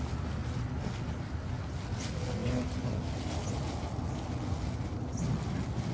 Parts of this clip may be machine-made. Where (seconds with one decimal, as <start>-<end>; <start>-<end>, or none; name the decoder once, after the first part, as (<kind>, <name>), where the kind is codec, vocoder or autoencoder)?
none